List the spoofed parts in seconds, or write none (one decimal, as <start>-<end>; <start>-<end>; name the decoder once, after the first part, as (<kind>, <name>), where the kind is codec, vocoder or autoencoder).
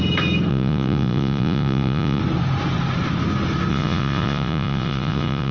0.5-2.2 (vocoder, Vocos); 3.7-5.5